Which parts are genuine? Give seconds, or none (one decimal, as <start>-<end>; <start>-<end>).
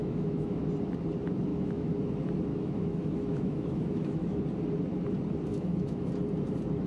0.6-1.5; 2.0-2.5; 4.4-5.5; 6.1-6.9